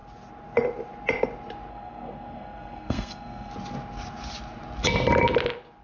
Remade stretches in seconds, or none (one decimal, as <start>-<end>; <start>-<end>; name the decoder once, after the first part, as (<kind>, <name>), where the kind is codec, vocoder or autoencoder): 1.7-3.5 (codec, SNAC)

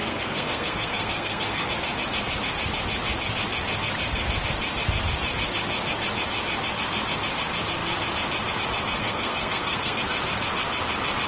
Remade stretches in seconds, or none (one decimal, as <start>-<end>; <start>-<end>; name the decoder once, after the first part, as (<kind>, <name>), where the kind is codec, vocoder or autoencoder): 0.0-1.7 (codec, SNAC); 9.0-10.0

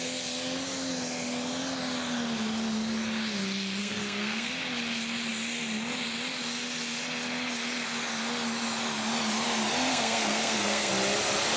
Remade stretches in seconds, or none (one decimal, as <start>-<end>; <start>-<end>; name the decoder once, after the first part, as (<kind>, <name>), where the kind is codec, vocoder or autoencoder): 3.8-4.5 (codec, SNAC); 9.9-10.9